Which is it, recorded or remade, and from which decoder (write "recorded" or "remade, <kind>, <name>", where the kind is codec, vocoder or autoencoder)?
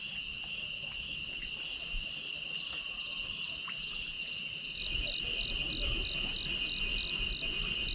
recorded